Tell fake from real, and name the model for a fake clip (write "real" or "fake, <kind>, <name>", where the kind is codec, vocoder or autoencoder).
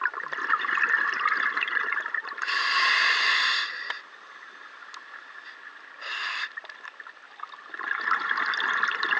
real